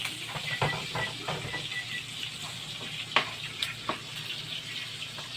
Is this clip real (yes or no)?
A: yes